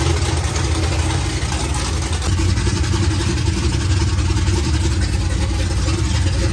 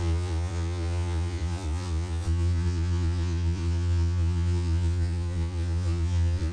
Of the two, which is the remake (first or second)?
second